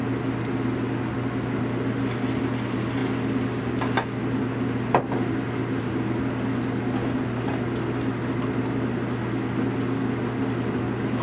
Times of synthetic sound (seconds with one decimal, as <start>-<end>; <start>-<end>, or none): none